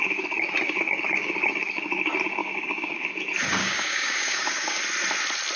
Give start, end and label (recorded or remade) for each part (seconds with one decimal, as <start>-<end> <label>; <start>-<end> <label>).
0.0-2.4 recorded; 2.4-3.1 remade; 3.1-3.6 recorded; 3.6-4.8 remade; 4.8-5.6 recorded